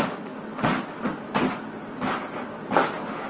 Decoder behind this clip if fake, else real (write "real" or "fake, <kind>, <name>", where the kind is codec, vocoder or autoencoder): real